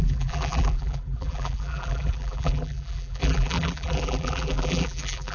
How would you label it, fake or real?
fake